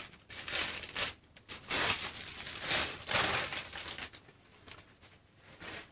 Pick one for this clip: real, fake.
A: real